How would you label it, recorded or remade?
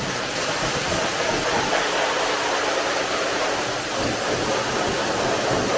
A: recorded